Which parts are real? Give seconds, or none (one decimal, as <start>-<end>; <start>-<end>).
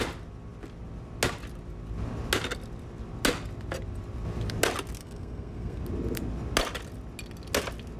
0.0-5.0; 5.8-8.0